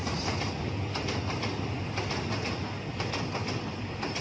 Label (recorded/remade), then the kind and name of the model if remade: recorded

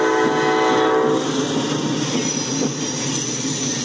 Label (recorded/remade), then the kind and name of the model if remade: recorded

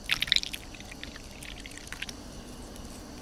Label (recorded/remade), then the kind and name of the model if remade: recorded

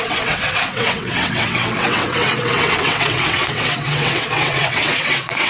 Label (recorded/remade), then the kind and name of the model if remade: remade, vocoder, WaveNeXt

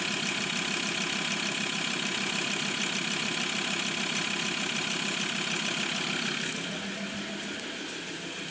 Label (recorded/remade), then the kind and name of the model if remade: recorded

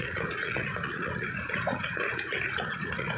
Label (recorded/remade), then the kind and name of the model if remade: remade, vocoder, Vocos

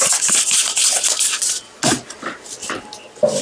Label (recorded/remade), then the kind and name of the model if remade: recorded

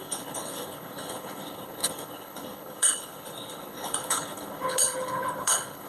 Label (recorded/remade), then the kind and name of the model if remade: remade, codec, HILCodec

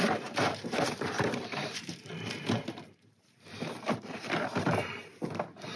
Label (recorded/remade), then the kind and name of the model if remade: remade, vocoder, BigVGAN v2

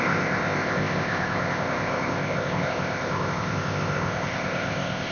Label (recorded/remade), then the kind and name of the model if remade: remade, codec, ZipCodec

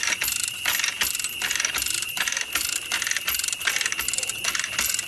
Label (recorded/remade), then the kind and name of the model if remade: recorded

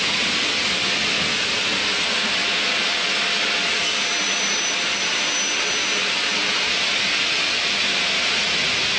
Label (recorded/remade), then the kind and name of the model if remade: recorded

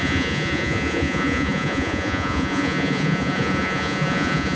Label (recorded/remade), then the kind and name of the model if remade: remade, vocoder, Vocos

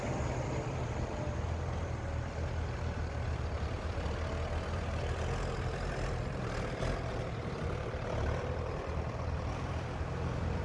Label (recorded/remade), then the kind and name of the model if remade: remade, vocoder, BigVGAN v2